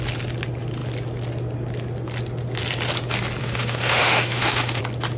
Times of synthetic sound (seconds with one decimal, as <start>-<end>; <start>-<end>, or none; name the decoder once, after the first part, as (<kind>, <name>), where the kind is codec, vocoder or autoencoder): 3.4-4.8 (autoencoder, DAC-VAE)